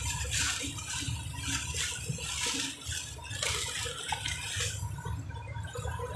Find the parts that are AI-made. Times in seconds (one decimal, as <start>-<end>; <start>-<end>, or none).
none